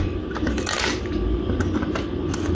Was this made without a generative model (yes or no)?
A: yes